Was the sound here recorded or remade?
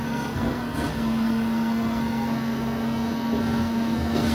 remade